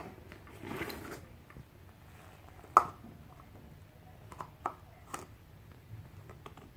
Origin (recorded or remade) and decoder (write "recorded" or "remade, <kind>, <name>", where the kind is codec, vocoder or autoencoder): recorded